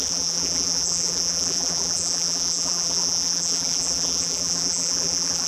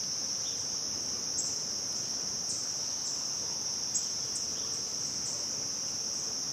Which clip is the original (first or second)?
second